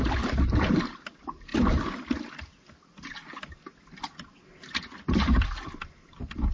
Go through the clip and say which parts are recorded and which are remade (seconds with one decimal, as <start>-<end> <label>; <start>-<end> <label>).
0.0-6.5 recorded